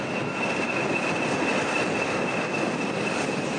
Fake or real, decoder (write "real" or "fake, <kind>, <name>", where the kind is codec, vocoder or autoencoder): real